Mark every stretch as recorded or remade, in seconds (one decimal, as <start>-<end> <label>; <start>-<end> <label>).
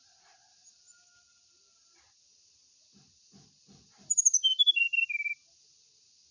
0.0-6.3 recorded